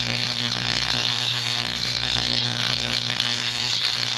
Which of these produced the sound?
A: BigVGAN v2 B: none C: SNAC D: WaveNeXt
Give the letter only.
C